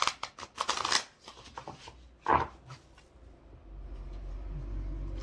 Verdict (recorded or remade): recorded